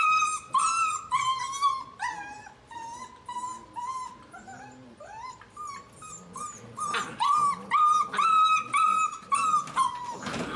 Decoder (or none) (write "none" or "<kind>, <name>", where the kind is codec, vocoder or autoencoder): none